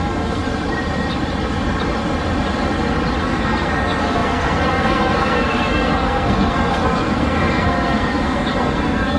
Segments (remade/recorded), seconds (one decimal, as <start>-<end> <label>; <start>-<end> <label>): 0.0-0.4 remade; 0.4-3.2 recorded; 3.2-9.2 remade